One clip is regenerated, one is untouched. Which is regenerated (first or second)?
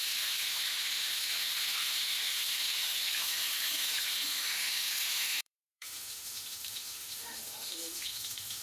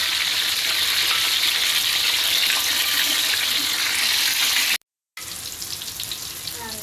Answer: first